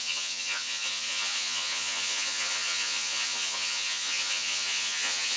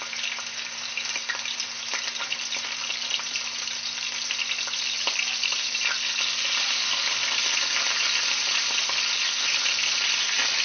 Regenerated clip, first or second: first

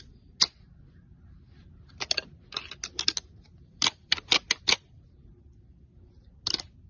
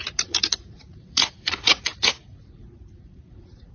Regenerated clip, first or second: second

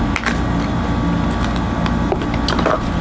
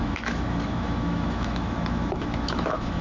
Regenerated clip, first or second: second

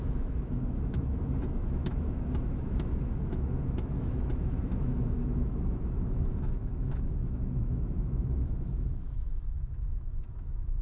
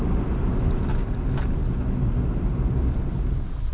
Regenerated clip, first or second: first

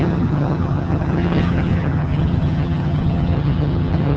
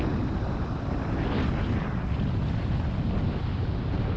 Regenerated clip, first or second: first